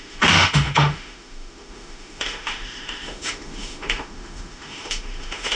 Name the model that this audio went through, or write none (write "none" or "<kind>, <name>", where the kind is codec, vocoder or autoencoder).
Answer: autoencoder, DAC-VAE